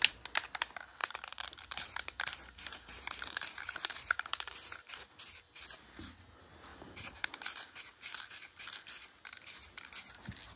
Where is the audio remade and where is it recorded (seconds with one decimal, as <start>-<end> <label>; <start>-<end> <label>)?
0.0-1.0 recorded; 1.0-5.0 remade; 5.0-6.7 recorded; 6.7-8.2 remade; 8.2-10.6 recorded